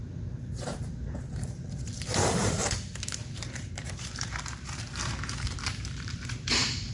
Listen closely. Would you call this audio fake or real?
fake